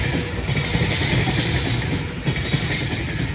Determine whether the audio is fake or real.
real